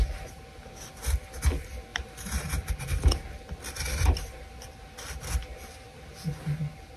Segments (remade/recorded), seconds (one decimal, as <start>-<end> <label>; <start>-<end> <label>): 0.0-1.9 recorded; 1.9-2.7 remade; 2.7-7.0 recorded